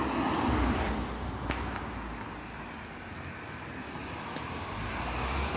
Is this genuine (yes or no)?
yes